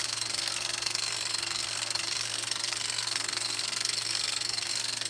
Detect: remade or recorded remade